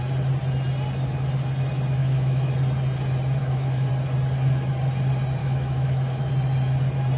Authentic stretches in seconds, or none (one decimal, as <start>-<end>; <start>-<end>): 0.0-2.0; 2.5-3.4; 3.9-5.4; 6.3-7.2